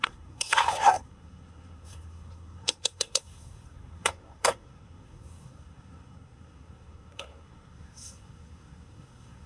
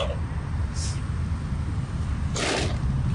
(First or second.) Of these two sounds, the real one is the second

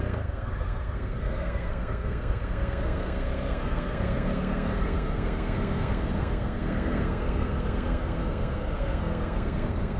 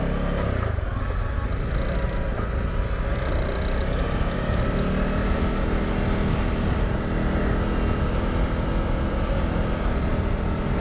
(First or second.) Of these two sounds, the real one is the second